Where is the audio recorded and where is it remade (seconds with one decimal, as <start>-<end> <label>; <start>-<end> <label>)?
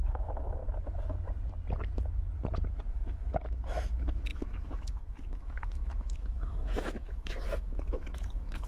0.0-0.6 remade; 0.6-2.9 recorded; 2.9-8.7 remade